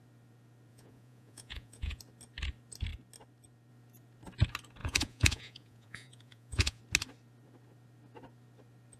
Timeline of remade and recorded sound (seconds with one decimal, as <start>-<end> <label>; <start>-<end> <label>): 0.0-0.7 recorded; 0.7-2.0 remade; 2.0-4.8 recorded; 4.8-6.8 remade; 6.8-9.0 recorded